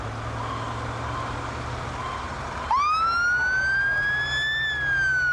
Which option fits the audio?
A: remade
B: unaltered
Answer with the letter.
B